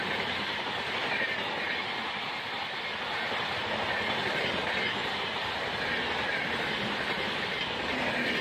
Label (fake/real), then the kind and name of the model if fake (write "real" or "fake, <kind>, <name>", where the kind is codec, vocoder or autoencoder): real